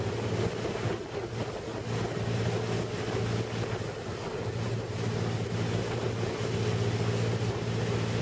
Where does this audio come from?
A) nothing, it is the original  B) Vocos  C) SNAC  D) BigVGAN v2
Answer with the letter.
A